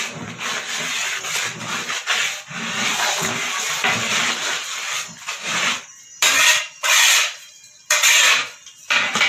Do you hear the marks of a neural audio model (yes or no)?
yes